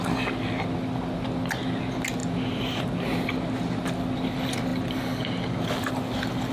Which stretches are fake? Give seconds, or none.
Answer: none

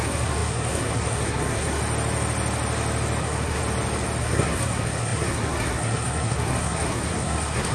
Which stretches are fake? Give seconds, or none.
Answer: 0.0-1.8; 3.2-3.6; 4.2-7.7

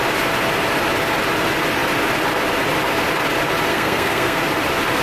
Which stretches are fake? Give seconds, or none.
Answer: 3.7-4.4

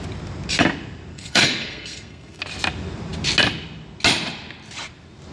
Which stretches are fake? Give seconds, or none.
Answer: 1.1-2.4

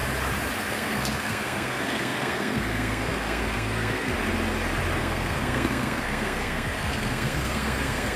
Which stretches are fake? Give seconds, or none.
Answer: 0.7-4.1; 5.0-8.2

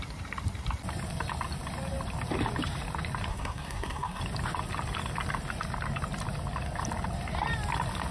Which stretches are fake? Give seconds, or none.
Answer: 3.3-4.2

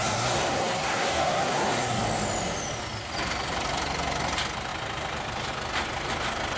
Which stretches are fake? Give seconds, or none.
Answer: 0.0-2.0

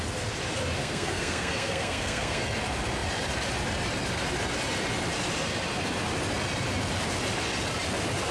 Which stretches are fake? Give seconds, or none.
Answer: 0.8-2.4